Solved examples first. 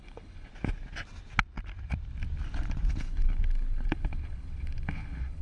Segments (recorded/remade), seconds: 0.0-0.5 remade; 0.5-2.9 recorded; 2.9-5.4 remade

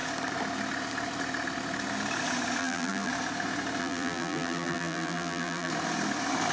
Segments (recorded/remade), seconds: 0.0-2.6 recorded; 2.6-3.1 remade; 3.1-3.8 recorded; 3.8-5.7 remade; 5.7-6.5 recorded